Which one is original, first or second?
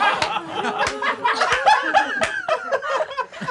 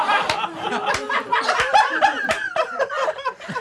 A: first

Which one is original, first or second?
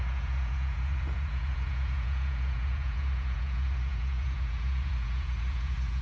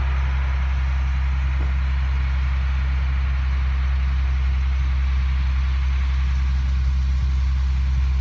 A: second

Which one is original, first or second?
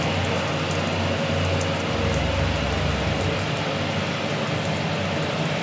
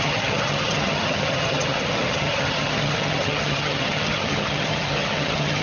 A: first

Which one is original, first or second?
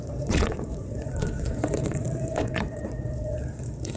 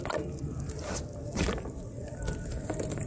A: second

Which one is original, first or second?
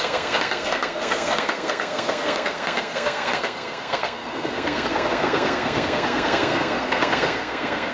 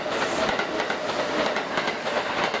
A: second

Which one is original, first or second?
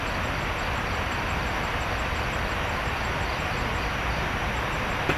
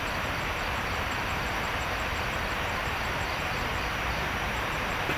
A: first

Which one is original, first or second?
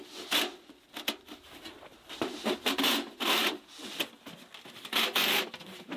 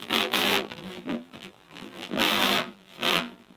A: first